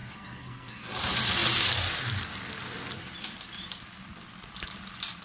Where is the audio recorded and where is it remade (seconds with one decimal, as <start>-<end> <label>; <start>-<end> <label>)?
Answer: 0.0-0.9 remade; 0.9-5.2 recorded